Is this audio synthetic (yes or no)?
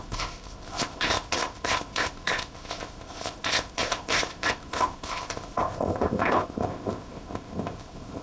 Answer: yes